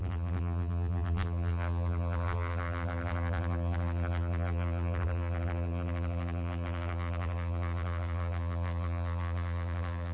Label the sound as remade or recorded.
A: remade